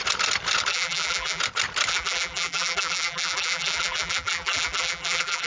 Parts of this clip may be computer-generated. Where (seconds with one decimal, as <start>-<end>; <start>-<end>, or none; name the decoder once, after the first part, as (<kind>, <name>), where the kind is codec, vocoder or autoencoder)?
0.7-1.4 (vocoder, BigVGAN v2); 1.9-5.5